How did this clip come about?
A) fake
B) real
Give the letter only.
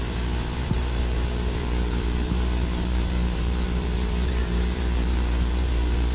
A